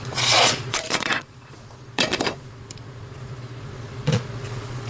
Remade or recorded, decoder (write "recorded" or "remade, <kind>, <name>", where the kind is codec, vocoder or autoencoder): remade, vocoder, Vocos